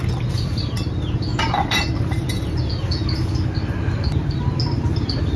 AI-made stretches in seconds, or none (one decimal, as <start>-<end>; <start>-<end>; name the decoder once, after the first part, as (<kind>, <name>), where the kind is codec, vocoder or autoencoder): 1.3-2.6 (vocoder, BigVGAN v2)